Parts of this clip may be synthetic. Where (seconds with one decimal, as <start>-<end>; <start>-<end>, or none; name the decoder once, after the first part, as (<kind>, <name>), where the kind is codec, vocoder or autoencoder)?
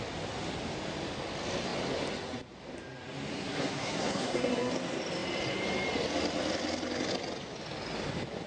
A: 3.3-4.7 (codec, SNAC)